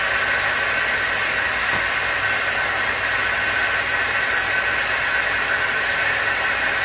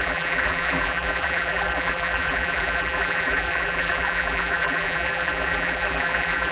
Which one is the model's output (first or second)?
second